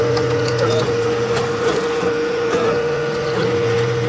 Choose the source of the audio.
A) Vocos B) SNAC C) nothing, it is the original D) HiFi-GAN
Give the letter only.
A